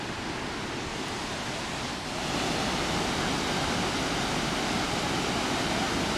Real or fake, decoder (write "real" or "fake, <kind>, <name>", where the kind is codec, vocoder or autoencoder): real